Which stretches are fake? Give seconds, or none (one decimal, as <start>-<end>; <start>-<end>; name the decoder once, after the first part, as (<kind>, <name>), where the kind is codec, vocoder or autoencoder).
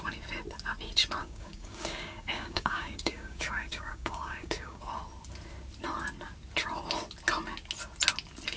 1.2-4.9 (codec, DAC)